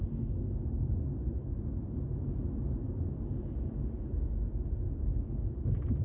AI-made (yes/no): no